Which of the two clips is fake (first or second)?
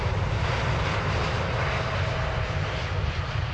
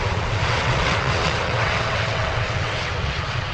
second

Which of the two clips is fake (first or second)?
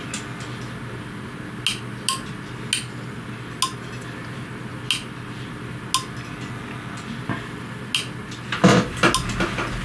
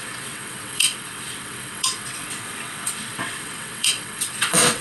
second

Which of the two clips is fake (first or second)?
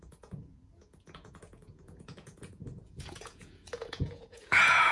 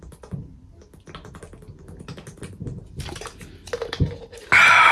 first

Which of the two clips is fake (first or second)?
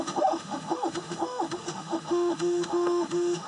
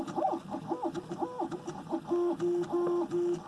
first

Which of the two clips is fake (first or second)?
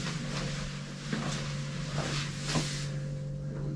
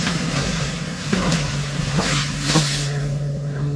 second